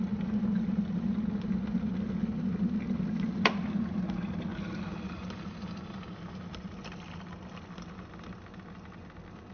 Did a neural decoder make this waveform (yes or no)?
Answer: no